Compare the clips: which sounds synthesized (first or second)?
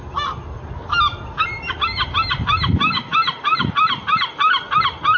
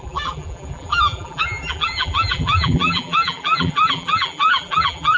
second